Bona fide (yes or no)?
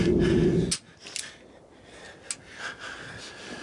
yes